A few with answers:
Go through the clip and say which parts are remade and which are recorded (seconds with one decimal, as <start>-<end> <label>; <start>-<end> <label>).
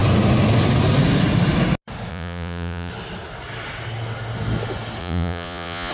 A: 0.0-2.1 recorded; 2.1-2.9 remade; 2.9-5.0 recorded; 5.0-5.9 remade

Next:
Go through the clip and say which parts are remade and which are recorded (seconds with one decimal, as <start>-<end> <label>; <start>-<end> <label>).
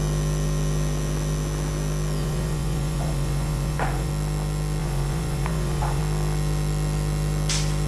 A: 0.0-2.2 recorded; 2.2-4.1 remade; 4.1-4.8 recorded; 4.8-6.0 remade; 6.0-7.9 recorded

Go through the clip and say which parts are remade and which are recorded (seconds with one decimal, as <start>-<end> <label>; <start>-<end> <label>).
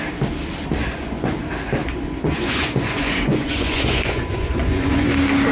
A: 0.0-0.8 recorded; 0.8-1.4 remade; 1.4-1.8 recorded; 1.8-5.1 remade; 5.1-5.5 recorded